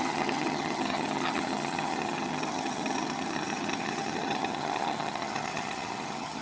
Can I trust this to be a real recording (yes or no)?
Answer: no